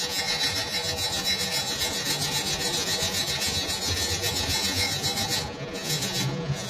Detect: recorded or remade remade